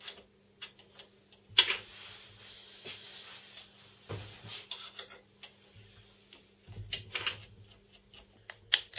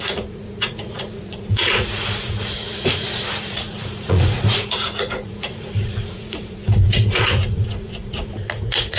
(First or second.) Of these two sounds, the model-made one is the second